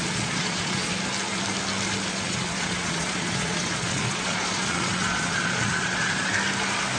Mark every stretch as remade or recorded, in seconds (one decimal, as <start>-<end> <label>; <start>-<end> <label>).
0.0-0.9 remade; 0.9-2.1 recorded; 2.1-6.3 remade; 6.3-7.0 recorded